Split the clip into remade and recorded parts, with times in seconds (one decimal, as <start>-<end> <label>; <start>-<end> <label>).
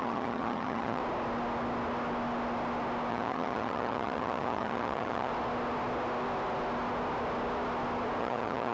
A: 0.0-1.0 remade; 1.0-3.1 recorded; 3.1-5.3 remade; 5.3-8.2 recorded; 8.2-8.7 remade